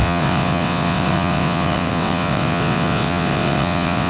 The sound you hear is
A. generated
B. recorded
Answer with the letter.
A